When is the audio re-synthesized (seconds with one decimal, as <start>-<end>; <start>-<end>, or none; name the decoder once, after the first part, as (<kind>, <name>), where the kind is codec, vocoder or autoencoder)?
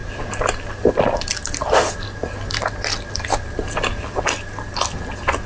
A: none